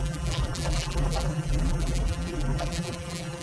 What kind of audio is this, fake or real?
fake